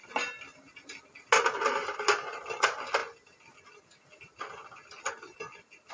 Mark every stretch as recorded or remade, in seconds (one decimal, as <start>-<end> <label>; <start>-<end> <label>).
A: 0.0-5.9 recorded

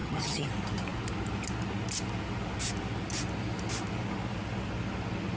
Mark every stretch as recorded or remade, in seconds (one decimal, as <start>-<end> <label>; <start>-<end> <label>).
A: 0.0-0.5 remade; 0.5-5.4 recorded

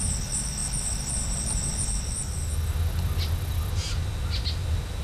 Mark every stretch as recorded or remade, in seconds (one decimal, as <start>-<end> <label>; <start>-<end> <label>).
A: 0.0-5.0 recorded

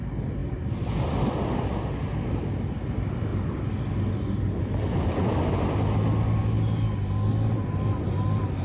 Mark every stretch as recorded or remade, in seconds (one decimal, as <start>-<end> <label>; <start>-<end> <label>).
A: 0.0-8.6 recorded

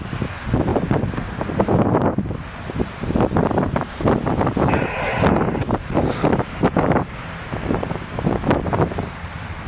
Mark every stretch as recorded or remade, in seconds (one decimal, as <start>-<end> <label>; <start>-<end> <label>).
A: 0.0-0.7 recorded; 0.7-1.5 remade; 1.5-9.7 recorded

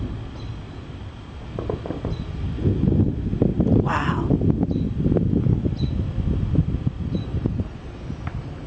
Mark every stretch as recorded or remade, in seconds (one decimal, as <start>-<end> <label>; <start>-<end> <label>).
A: 0.0-7.3 recorded; 7.3-7.9 remade; 7.9-8.7 recorded

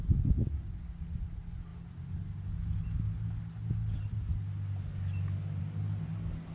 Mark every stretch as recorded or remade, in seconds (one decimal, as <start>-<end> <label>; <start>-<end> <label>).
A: 0.0-6.5 recorded

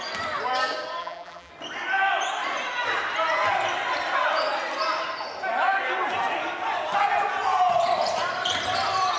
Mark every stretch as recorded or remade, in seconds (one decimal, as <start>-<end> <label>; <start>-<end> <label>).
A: 0.0-1.0 recorded; 1.0-1.5 remade; 1.5-9.2 recorded